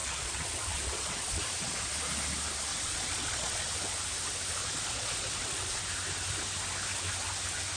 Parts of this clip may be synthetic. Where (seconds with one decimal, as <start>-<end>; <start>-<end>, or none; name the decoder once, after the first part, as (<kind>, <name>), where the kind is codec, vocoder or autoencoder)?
0.0-1.9 (vocoder, Vocos); 2.7-3.7; 4.6-5.8